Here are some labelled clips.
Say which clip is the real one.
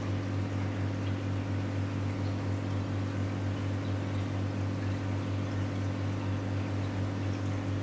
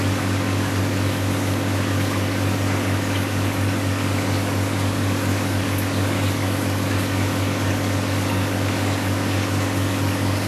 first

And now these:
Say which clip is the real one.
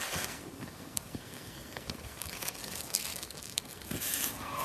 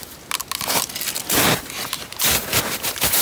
second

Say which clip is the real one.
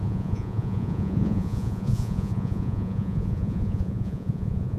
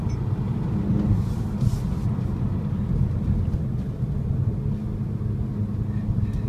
second